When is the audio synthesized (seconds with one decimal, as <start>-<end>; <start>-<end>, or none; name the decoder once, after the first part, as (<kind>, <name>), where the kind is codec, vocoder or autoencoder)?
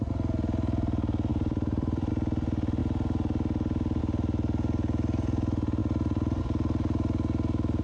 1.3-2.1 (vocoder, BigVGAN v2)